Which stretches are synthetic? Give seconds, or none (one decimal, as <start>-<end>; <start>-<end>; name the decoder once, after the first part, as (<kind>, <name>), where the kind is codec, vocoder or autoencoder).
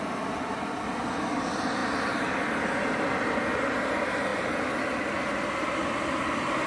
none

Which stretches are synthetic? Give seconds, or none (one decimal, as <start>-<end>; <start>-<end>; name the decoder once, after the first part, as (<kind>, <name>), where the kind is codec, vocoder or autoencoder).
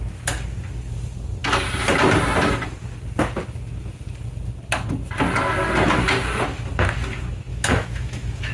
7.5-8.5 (autoencoder, DAC-VAE)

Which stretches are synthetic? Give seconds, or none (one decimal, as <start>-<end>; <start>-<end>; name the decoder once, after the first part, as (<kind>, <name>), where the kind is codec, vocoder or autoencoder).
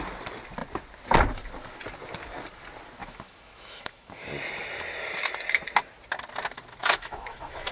3.0-4.3 (autoencoder, DAC-VAE); 6.8-7.7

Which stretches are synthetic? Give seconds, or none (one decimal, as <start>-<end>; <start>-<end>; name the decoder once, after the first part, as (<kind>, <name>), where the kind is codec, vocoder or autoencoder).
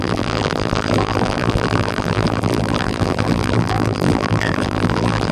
0.0-5.3 (vocoder, BigVGAN v2)